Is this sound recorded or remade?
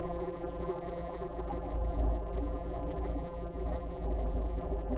remade